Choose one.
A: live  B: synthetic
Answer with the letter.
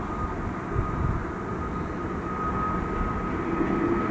A